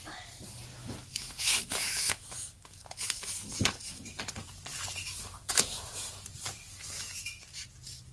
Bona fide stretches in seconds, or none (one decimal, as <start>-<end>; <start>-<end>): 0.0-0.8; 4.2-5.0; 6.1-6.7; 7.4-8.1